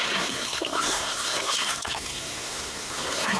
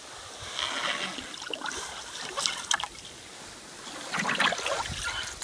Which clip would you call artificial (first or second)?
first